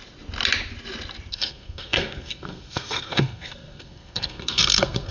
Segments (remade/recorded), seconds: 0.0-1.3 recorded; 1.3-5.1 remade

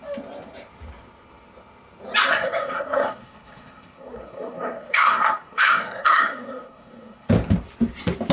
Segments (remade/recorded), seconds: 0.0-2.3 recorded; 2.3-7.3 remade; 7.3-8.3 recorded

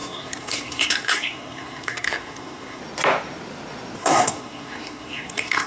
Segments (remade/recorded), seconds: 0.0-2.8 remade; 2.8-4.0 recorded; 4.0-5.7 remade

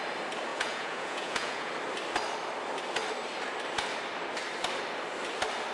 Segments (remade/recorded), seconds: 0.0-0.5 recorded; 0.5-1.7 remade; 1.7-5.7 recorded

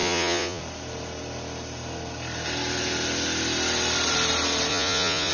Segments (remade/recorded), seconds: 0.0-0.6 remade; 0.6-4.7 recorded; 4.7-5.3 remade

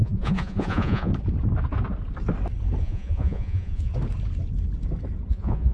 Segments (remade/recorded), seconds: 0.0-1.1 remade; 1.1-2.8 recorded; 2.8-3.9 remade; 3.9-5.3 recorded; 5.3-5.7 remade

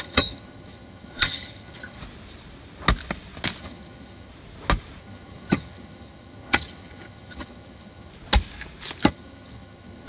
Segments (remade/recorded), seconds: 0.0-2.0 remade; 2.0-3.6 recorded; 3.6-4.3 remade; 4.3-5.0 recorded; 5.0-8.1 remade; 8.1-9.1 recorded; 9.1-10.1 remade

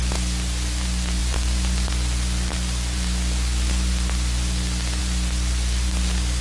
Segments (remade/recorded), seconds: 0.0-6.4 recorded